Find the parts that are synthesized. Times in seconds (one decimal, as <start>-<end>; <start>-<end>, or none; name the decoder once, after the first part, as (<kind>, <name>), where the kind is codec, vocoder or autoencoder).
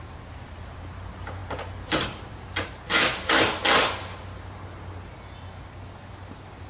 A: none